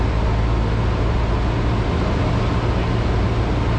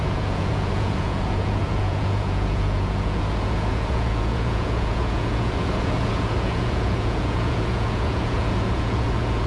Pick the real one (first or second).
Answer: first